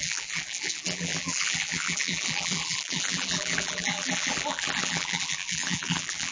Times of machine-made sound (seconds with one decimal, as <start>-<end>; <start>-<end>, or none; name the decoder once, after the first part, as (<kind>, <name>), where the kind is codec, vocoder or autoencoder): 0.0-6.3 (vocoder, BigVGAN v2)